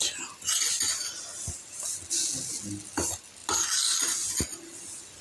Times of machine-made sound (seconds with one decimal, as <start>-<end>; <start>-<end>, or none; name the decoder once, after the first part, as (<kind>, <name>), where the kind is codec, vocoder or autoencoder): none